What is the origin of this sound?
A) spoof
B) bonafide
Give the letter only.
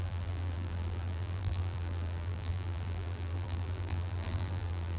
A